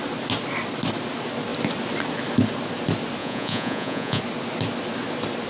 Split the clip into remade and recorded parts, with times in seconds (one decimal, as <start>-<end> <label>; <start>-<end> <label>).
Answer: 0.0-3.2 recorded; 3.2-4.2 remade; 4.2-5.5 recorded